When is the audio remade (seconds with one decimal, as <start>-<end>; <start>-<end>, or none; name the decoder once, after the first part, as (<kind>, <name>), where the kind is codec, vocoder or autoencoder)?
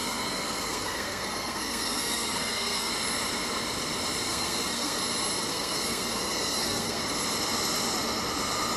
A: 0.0-2.9 (codec, SNAC); 4.3-5.0; 5.5-7.0